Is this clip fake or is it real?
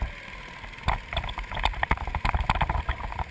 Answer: real